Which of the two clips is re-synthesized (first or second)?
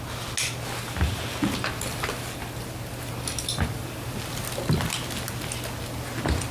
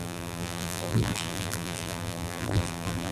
second